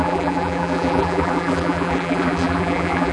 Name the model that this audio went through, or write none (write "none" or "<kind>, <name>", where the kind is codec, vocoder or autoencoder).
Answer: vocoder, BigVGAN v2